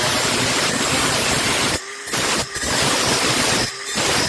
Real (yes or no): no